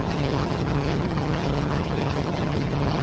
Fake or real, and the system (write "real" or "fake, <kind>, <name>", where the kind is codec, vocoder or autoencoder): fake, vocoder, HiFi-GAN